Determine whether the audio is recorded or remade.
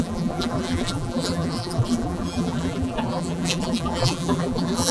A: remade